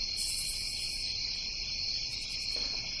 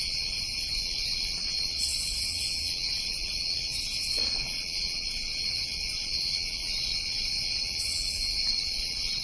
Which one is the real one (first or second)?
first